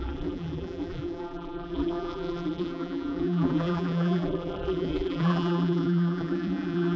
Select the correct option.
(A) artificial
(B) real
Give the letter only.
A